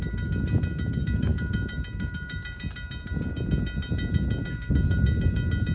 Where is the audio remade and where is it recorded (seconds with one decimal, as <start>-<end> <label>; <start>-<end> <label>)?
0.0-5.7 recorded